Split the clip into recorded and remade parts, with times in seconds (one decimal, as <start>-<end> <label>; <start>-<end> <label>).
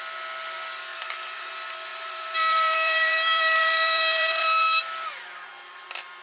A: 0.0-0.9 recorded; 0.9-1.5 remade; 1.5-1.9 recorded; 1.9-4.6 remade; 4.6-6.2 recorded